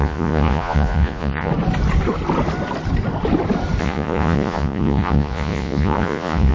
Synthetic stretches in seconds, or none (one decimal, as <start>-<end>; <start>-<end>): 0.0-1.5; 3.8-6.5